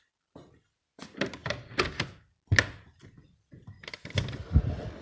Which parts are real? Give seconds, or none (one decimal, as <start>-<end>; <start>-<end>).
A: 0.0-5.0